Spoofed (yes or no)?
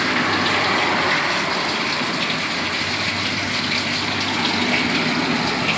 no